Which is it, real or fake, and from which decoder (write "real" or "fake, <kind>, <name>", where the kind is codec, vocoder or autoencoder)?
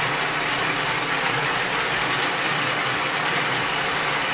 real